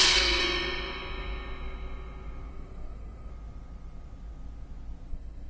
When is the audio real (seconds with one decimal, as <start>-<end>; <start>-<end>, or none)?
0.4-2.5; 3.3-5.1